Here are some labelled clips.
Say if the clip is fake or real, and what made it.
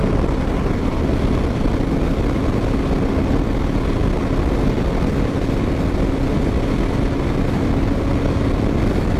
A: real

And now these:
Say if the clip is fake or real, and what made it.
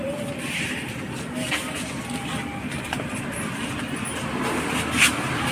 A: real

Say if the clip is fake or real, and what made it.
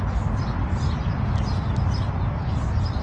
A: real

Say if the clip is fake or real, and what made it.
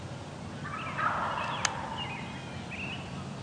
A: real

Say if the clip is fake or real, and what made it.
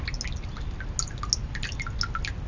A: real